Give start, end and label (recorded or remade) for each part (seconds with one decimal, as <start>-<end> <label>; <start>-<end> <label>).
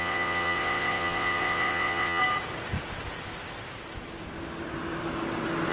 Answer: 0.0-2.2 remade; 2.2-5.7 recorded